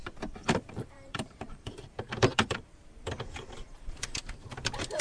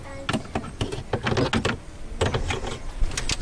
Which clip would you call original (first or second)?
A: second